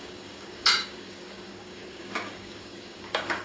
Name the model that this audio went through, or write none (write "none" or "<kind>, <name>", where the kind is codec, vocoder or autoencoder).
codec, DAC